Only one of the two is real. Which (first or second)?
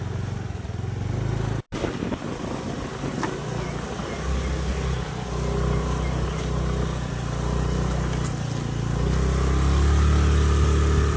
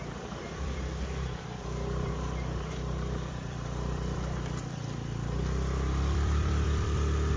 first